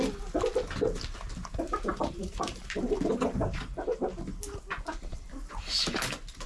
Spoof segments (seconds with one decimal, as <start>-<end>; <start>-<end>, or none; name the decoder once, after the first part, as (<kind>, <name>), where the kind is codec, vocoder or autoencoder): 1.9-3.6 (vocoder, BigVGAN v2); 5.1-6.0